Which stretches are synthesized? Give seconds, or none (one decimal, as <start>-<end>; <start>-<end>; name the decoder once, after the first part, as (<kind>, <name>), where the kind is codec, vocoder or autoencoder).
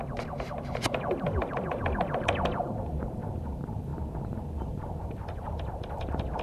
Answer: 0.0-3.9 (vocoder, BigVGAN v2); 5.0-6.4